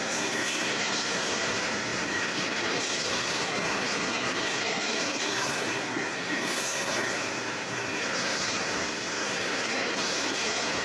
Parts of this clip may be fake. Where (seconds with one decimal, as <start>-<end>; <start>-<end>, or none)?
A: 0.0-10.8